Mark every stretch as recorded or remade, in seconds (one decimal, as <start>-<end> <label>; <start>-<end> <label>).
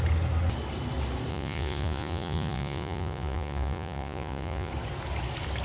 0.0-1.3 recorded; 1.3-4.7 remade; 4.7-5.6 recorded